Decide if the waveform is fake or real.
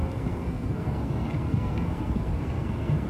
fake